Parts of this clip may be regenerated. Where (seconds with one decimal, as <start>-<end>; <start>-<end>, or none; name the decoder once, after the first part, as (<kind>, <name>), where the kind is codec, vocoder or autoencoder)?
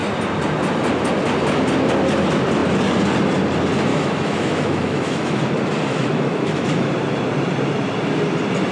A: 3.9-5.4 (autoencoder, DAC-VAE); 5.9-6.9